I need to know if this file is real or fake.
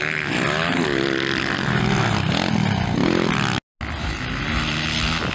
real